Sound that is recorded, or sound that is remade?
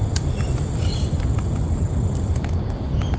recorded